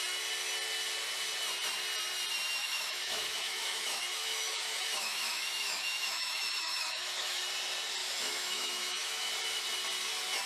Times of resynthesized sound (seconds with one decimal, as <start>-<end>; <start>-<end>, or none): 2.6-7.4; 8.0-9.3